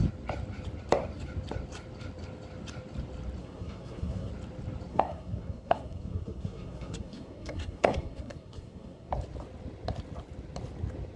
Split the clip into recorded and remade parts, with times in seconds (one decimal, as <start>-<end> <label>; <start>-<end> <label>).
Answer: 0.0-3.4 recorded; 3.4-4.3 remade; 4.3-4.9 recorded; 4.9-9.1 remade; 9.1-11.2 recorded